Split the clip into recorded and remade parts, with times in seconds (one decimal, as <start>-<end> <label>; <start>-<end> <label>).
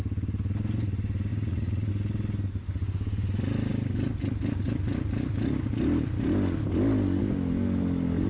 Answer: 0.0-1.3 recorded; 1.3-1.9 remade; 1.9-8.3 recorded